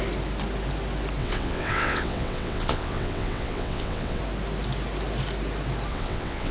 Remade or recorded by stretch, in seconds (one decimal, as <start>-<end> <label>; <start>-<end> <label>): 0.0-1.2 recorded; 1.2-4.2 remade; 4.2-5.9 recorded; 5.9-6.5 remade